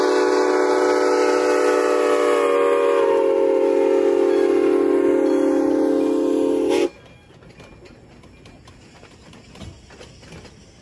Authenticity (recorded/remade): recorded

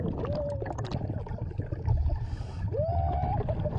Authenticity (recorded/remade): recorded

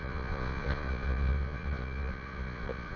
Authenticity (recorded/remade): remade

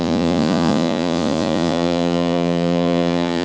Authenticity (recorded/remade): remade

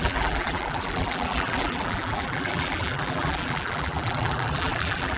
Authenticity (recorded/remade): remade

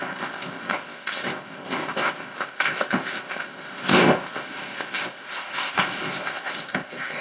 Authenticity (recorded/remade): remade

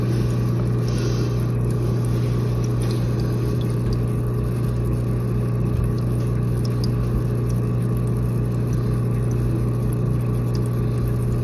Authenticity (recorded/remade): recorded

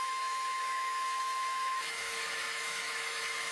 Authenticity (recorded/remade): remade